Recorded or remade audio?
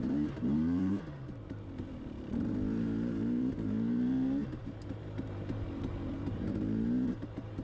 remade